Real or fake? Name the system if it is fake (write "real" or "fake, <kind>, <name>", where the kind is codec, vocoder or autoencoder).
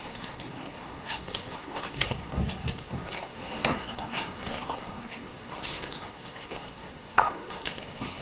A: fake, codec, SNAC